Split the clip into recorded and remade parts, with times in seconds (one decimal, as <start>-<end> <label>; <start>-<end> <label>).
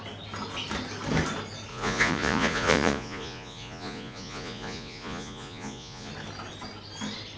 0.0-1.7 recorded; 1.7-6.1 remade; 6.1-7.4 recorded